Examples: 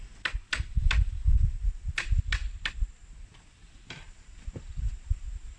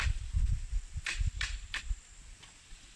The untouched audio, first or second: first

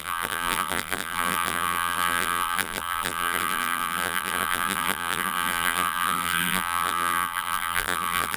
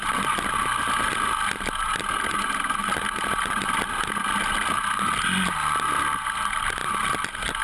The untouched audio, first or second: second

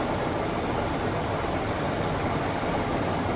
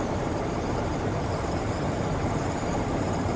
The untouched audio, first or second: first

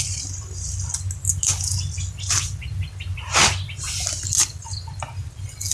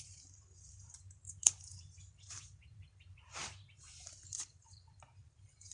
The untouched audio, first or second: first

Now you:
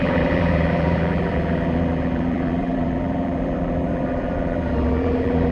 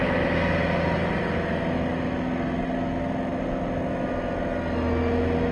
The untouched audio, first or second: second